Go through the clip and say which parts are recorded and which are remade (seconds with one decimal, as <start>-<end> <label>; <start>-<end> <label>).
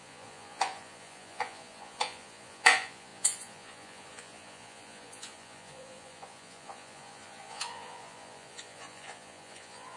0.0-10.0 remade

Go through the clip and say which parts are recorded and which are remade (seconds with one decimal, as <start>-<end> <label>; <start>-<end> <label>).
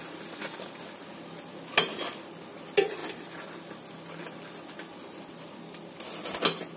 0.0-6.8 recorded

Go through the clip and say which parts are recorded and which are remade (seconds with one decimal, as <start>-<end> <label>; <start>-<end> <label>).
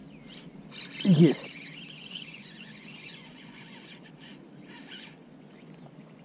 0.0-1.9 recorded; 1.9-4.3 remade; 4.3-4.9 recorded; 4.9-6.2 remade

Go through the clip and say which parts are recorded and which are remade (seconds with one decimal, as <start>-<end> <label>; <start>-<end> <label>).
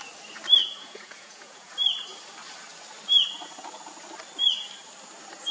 0.0-0.6 recorded; 0.6-1.7 remade; 1.7-5.5 recorded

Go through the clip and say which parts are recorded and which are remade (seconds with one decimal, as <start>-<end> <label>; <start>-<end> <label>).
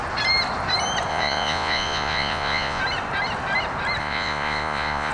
0.0-1.1 recorded; 1.1-2.8 remade; 2.8-4.0 recorded; 4.0-5.1 remade